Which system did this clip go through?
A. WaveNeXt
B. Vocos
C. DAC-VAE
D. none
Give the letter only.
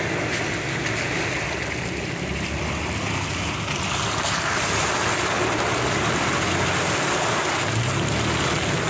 D